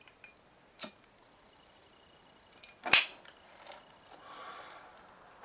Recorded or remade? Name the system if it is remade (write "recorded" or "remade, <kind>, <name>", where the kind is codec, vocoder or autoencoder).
recorded